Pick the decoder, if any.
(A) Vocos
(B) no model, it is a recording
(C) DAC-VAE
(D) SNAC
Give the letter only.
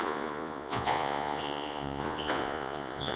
A